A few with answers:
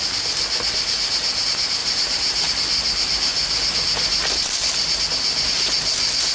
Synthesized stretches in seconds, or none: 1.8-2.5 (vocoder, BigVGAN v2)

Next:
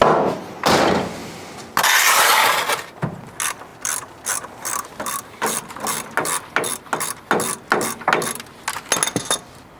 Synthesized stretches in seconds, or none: none